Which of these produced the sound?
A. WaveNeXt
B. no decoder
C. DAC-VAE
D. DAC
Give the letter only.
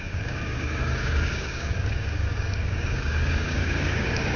D